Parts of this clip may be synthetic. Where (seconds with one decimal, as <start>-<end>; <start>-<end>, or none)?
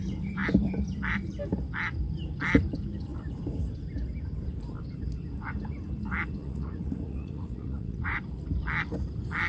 6.4-8.2